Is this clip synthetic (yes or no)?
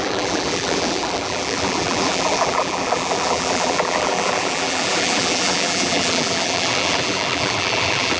yes